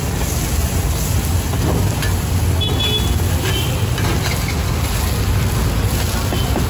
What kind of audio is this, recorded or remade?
recorded